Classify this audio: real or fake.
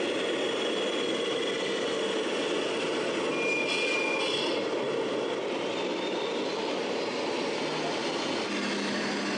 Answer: real